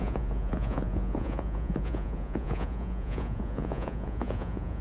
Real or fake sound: fake